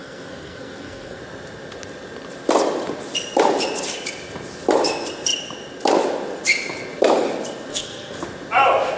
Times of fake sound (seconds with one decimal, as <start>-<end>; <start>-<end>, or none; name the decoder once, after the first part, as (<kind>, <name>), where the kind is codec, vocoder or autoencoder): 0.0-1.2 (codec, SNAC); 7.7-8.2